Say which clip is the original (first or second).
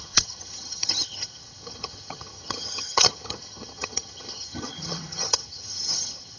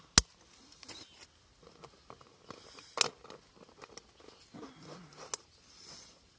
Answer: second